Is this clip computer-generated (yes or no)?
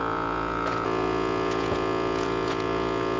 yes